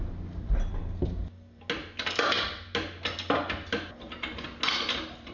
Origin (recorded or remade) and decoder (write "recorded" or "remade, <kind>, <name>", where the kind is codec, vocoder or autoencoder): recorded